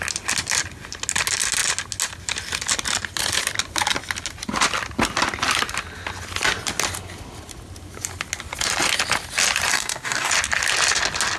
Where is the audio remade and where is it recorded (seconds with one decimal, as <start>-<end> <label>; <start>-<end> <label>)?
0.0-9.7 recorded; 9.7-10.3 remade; 10.3-11.4 recorded